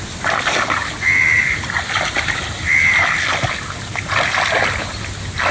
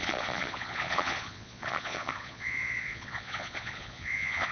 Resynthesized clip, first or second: second